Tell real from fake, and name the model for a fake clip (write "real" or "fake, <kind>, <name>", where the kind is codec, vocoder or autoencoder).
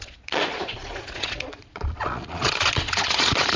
fake, vocoder, Vocos